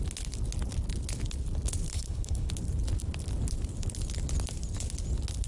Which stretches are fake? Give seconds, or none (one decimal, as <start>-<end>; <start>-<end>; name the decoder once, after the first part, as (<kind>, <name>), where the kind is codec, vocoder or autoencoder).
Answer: 1.9-2.5 (codec, HILCodec)